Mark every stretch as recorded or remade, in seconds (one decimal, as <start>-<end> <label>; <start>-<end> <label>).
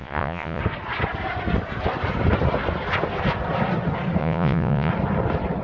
0.0-0.6 remade; 0.6-4.2 recorded; 4.2-4.9 remade; 4.9-5.6 recorded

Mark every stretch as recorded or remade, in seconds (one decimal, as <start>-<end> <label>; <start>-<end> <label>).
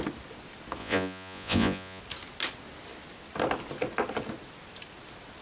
0.0-0.8 recorded; 0.8-2.0 remade; 2.0-5.4 recorded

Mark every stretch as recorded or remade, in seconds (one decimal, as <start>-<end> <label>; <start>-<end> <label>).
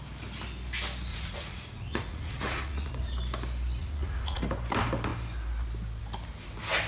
0.0-1.1 recorded; 1.1-2.9 remade; 2.9-3.8 recorded; 3.8-4.4 remade; 4.4-6.9 recorded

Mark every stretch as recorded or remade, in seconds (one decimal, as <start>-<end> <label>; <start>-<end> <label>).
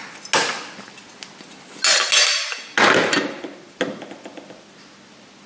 0.0-5.5 recorded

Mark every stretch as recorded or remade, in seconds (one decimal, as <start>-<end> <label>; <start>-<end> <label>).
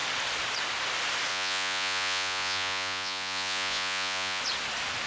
0.0-1.3 recorded; 1.3-4.4 remade; 4.4-5.1 recorded